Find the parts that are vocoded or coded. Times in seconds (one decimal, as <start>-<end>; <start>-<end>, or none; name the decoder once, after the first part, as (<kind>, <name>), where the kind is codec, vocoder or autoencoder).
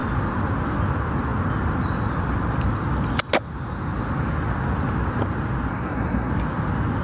5.7-6.3 (codec, SNAC)